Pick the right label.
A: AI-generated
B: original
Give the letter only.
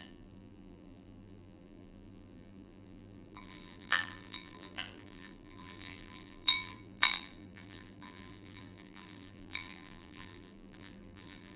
A